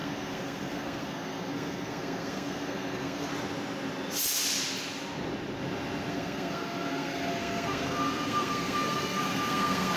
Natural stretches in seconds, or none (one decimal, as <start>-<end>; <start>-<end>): 3.3-6.1